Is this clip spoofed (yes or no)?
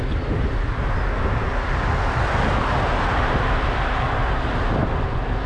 no